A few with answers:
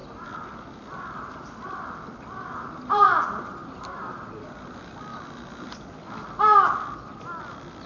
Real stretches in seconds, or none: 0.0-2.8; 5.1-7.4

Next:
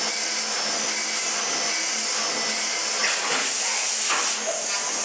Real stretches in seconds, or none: 0.0-5.0

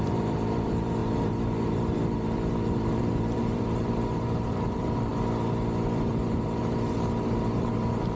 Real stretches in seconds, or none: 5.1-6.1

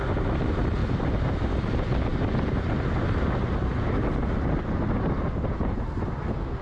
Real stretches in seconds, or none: 0.0-0.8; 1.7-6.6